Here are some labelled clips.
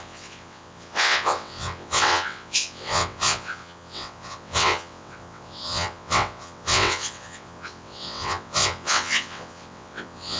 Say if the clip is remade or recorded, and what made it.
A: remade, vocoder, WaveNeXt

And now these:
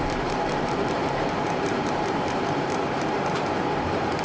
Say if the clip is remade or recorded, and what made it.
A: remade, vocoder, BigVGAN v2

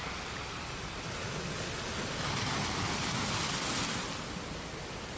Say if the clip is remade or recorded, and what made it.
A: recorded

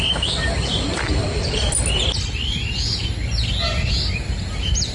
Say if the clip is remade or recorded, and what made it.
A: recorded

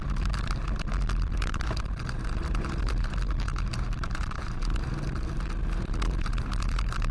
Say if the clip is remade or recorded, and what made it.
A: remade, vocoder, BigVGAN v2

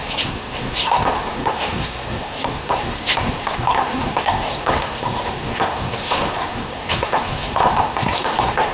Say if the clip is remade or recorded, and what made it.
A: remade, codec, SNAC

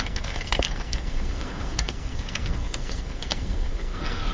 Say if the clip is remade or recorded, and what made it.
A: remade, codec, SNAC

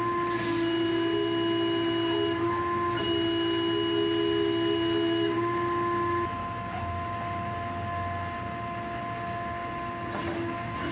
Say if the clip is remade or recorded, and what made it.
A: recorded